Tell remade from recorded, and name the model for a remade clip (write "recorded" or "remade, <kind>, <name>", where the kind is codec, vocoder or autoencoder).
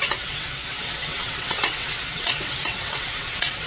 remade, vocoder, WaveNeXt